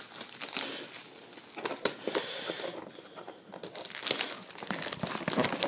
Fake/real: real